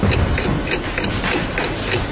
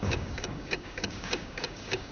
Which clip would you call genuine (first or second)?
first